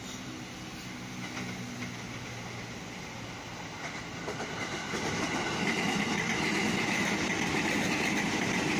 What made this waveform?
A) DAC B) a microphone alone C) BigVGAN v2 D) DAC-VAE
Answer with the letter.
B